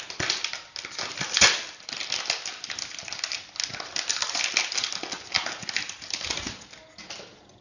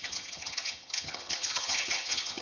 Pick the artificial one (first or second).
second